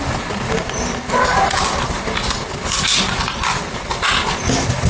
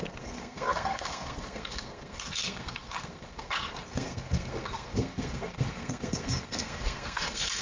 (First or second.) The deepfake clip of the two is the second